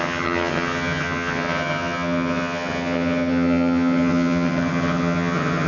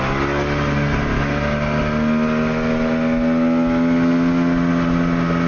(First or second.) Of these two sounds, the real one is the second